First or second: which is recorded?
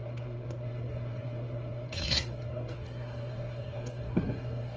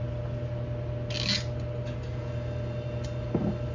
second